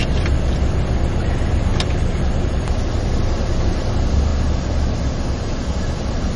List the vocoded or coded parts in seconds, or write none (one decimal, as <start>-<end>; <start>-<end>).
1.7-3.5